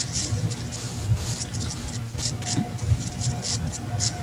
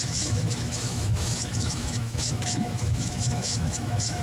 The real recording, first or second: first